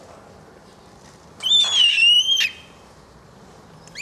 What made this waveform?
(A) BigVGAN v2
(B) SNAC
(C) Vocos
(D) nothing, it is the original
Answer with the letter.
D